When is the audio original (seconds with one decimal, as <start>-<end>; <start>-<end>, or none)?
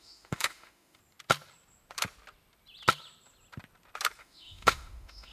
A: 1.0-4.2